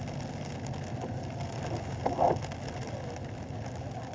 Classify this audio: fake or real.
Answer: real